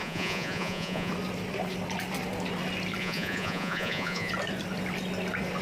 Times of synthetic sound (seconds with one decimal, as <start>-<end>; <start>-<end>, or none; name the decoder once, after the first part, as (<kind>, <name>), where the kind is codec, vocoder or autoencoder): 0.0-1.1 (vocoder, Vocos); 3.0-4.3